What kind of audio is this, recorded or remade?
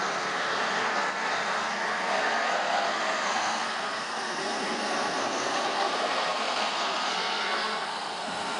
remade